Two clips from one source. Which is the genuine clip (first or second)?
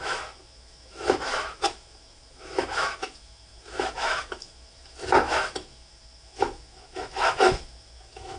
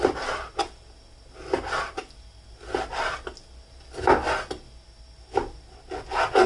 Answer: second